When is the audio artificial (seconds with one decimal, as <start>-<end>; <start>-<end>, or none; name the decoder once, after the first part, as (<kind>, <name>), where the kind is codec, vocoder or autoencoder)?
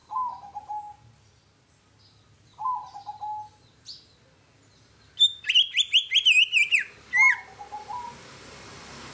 none